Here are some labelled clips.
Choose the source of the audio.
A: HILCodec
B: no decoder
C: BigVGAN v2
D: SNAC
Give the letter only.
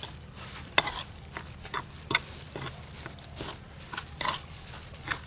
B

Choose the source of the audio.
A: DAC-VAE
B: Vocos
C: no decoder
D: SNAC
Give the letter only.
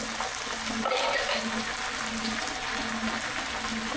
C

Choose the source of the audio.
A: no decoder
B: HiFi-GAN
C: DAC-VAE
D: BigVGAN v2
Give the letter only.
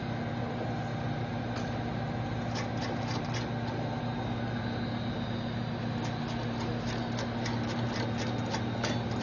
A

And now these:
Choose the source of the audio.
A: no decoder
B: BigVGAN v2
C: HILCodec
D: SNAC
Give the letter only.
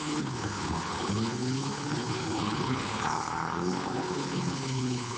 C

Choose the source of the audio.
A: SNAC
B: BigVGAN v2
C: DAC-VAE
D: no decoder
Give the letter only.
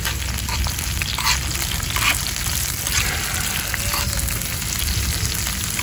D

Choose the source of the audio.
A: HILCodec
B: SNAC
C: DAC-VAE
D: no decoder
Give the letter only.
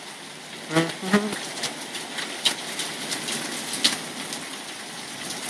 D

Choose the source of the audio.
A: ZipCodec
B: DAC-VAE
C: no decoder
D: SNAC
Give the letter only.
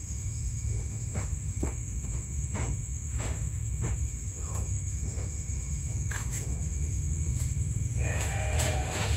B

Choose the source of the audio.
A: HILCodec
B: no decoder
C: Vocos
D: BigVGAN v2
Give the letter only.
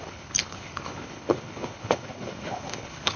A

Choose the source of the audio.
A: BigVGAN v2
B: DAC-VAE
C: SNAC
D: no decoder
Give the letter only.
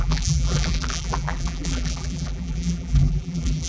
A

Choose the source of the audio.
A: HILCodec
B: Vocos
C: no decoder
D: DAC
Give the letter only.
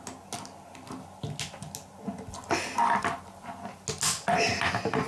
C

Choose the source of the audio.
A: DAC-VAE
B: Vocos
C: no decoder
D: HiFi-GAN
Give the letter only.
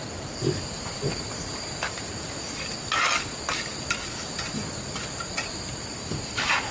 C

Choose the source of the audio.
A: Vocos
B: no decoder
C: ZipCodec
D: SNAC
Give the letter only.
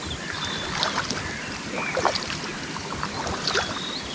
B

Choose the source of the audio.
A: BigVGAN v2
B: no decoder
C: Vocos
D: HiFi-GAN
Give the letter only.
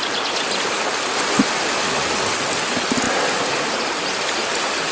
B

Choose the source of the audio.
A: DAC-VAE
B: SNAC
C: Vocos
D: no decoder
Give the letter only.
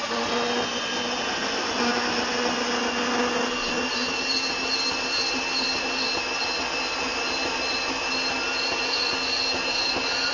D